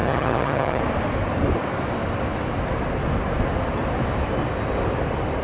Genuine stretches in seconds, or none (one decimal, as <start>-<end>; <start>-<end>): 0.8-5.4